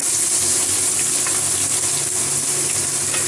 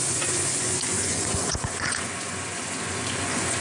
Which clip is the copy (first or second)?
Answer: second